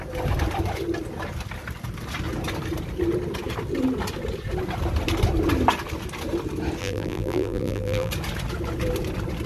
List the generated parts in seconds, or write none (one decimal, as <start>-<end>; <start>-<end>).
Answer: 6.8-8.1